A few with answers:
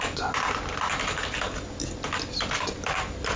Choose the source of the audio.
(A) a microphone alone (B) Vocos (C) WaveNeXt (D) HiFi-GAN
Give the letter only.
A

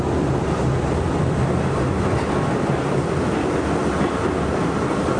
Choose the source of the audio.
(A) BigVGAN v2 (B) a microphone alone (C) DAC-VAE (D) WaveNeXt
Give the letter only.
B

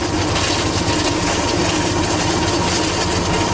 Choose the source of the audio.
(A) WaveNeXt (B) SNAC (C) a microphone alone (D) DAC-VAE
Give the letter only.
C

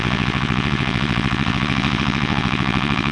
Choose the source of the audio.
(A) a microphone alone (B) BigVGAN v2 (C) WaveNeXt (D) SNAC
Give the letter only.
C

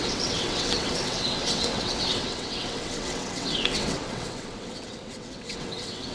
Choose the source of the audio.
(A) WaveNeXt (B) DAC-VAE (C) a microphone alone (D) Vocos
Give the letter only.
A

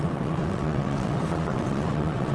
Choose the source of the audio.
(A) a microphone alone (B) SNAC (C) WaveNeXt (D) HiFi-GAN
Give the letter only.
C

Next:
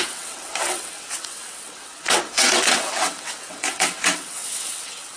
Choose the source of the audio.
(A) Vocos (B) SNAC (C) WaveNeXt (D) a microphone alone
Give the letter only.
C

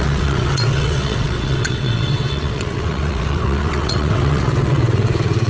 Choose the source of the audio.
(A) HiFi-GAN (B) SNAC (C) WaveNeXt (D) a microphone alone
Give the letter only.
C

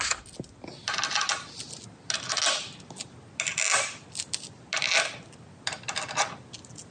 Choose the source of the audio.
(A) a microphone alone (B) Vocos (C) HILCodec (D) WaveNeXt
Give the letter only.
A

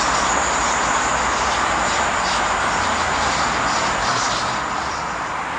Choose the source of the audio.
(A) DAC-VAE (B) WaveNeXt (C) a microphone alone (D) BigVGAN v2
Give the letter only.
C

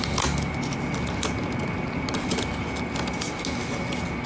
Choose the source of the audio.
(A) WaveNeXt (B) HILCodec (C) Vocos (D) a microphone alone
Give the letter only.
D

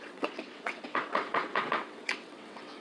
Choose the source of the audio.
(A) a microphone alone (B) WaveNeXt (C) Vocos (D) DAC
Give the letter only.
B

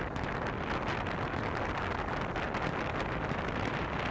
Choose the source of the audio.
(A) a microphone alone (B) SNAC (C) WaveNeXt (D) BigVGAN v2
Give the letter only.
A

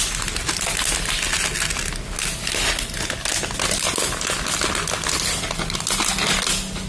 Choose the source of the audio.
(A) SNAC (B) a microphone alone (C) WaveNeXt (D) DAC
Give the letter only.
B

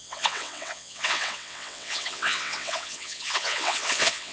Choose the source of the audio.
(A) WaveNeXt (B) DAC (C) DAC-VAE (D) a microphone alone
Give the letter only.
A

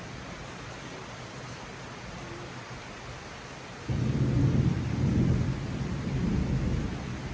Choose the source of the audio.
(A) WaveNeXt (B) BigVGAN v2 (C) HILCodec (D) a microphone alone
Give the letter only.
D